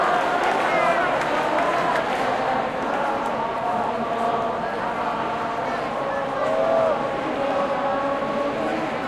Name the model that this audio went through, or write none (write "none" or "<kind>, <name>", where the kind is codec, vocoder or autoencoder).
none